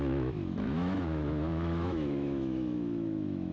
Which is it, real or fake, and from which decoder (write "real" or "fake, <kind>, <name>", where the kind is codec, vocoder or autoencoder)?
fake, autoencoder, DAC-VAE